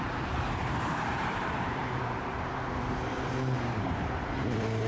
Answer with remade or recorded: remade